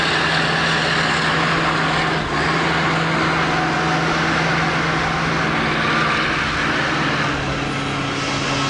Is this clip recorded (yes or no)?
yes